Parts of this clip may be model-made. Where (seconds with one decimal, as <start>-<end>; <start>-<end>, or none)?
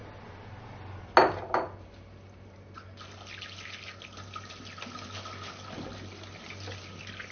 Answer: none